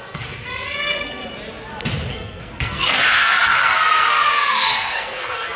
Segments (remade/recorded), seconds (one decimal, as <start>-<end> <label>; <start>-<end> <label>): 0.0-1.2 remade; 1.2-2.1 recorded; 2.1-5.6 remade